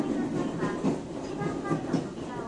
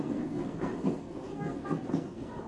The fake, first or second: second